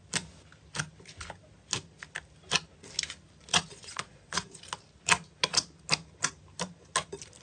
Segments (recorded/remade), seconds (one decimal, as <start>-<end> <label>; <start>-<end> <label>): 0.0-3.5 recorded; 3.5-4.6 remade; 4.6-7.4 recorded